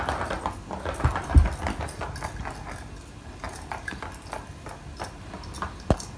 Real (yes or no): yes